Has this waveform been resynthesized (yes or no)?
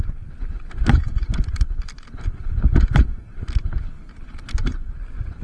no